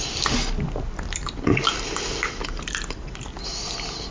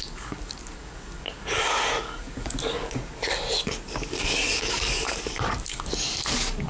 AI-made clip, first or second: second